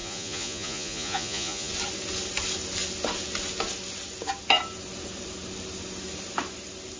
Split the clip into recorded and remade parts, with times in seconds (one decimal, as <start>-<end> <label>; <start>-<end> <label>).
0.0-1.7 remade; 1.7-7.0 recorded